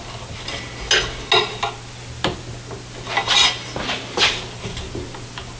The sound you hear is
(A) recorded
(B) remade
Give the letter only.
A